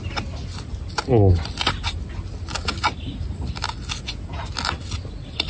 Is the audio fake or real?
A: real